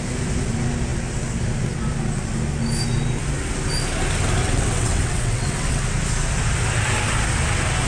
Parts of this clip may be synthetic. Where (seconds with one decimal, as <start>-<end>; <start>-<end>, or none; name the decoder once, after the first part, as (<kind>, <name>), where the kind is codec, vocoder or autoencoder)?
4.4-5.8 (vocoder, WaveNeXt)

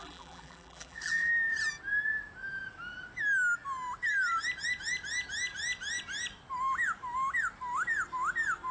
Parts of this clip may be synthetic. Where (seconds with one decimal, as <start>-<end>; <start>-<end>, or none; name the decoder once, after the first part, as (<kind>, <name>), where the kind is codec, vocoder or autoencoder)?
0.0-1.3 (vocoder, BigVGAN v2)

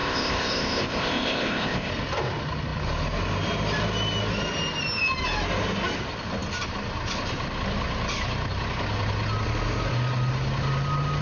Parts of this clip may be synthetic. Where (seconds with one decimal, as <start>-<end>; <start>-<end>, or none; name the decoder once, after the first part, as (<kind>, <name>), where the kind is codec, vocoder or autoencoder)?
0.0-1.9 (codec, ZipCodec)

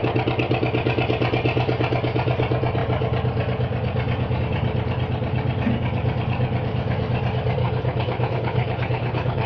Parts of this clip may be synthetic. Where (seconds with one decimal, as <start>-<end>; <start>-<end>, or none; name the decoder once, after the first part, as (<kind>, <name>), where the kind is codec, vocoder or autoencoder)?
7.6-9.5 (codec, HILCodec)

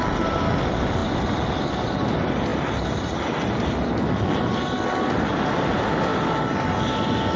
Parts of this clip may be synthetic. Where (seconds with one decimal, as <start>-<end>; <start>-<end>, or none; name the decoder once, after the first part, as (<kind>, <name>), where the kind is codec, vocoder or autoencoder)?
none

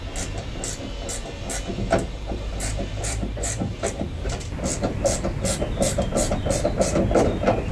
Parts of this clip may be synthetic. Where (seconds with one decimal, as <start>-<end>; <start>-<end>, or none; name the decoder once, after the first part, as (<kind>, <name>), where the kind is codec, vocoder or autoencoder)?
1.7-4.4 (vocoder, BigVGAN v2)

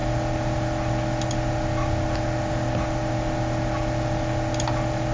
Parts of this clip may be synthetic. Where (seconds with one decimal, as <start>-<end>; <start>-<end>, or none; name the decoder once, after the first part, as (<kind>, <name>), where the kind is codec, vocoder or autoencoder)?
none